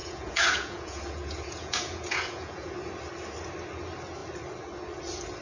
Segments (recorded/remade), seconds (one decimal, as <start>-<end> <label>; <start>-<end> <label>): 0.0-2.7 remade; 2.7-5.4 recorded